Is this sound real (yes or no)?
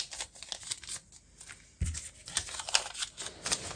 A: yes